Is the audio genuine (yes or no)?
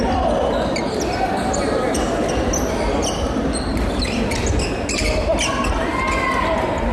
yes